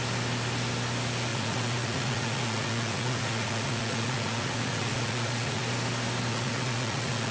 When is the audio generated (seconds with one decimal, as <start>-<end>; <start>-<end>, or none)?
1.3-5.6; 6.3-7.3